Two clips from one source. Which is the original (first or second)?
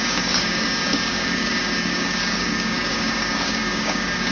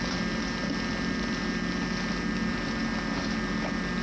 second